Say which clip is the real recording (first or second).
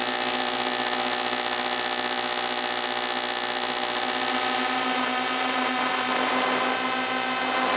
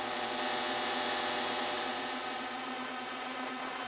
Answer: first